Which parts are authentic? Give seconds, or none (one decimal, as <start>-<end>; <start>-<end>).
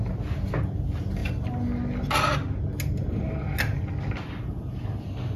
0.0-5.4